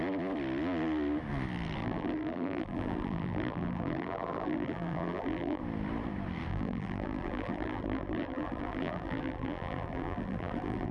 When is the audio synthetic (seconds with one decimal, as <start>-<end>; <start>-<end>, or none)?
1.8-5.6; 6.5-10.9